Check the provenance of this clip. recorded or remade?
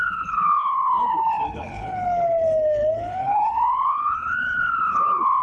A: remade